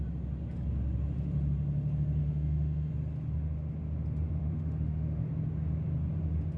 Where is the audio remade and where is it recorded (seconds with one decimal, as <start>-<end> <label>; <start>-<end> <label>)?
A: 0.0-2.2 recorded; 2.2-2.9 remade; 2.9-4.4 recorded; 4.4-5.2 remade; 5.2-6.6 recorded